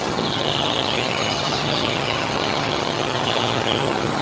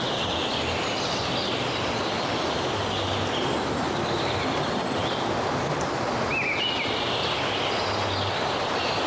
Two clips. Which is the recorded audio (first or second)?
second